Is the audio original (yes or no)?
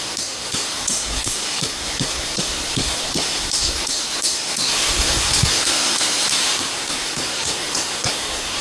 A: no